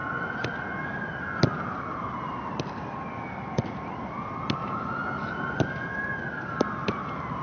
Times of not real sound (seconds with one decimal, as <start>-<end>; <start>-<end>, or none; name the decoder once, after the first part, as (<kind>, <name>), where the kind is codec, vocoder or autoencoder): none